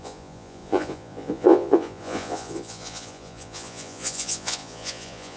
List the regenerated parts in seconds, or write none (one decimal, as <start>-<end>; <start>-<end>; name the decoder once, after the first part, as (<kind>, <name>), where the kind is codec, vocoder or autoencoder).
0.0-5.4 (vocoder, Vocos)